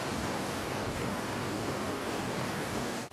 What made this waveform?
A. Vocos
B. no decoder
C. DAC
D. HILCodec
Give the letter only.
C